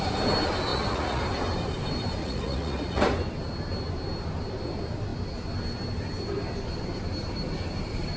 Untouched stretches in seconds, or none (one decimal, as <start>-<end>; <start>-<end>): 0.0-0.7; 1.2-2.2; 3.0-8.2